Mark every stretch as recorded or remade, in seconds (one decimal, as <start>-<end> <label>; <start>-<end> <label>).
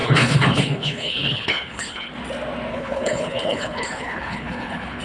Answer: 0.0-2.1 remade; 2.1-2.7 recorded; 2.7-5.0 remade